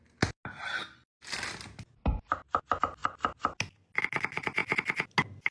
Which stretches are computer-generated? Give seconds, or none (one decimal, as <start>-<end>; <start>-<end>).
none